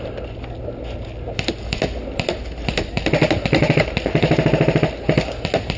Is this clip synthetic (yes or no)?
no